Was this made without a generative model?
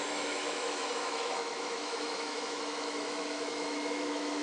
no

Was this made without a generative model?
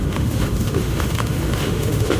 no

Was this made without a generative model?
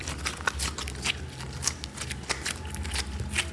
yes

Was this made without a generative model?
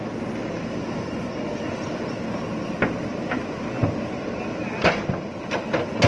yes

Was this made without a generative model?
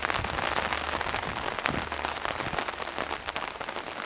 yes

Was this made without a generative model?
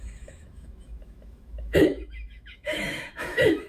no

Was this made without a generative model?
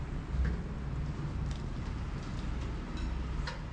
yes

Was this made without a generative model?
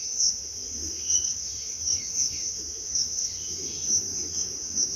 no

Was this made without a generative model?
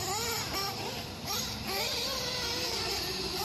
yes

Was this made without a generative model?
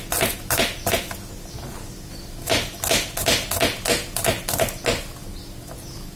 yes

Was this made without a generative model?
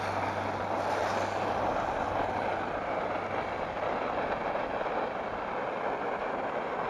yes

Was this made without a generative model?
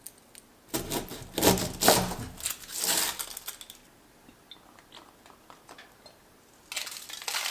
yes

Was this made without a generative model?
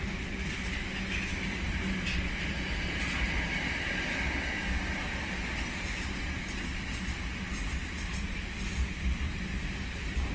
yes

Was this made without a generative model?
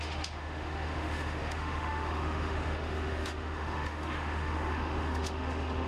no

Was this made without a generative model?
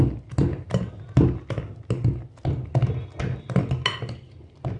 yes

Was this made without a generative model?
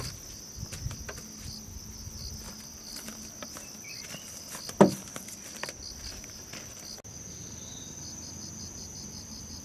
yes